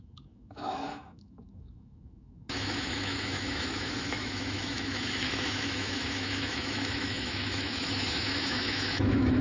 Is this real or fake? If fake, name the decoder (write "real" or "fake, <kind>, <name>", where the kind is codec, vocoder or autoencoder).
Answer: fake, autoencoder, DAC-VAE